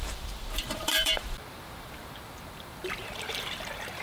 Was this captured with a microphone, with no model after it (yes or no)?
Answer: no